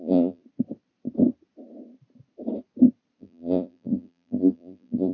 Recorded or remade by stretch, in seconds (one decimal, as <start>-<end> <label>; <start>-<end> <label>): 0.0-0.4 remade; 0.4-3.2 recorded; 3.2-5.1 remade